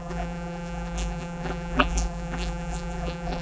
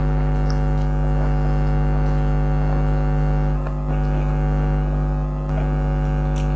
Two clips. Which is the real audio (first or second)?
second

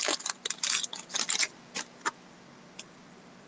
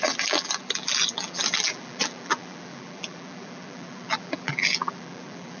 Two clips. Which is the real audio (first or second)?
first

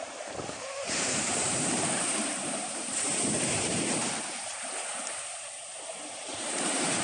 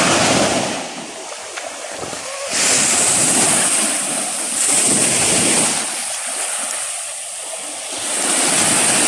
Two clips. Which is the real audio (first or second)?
second